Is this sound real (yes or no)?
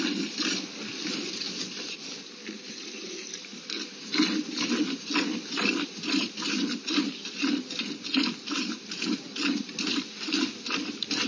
yes